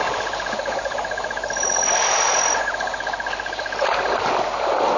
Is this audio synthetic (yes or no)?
no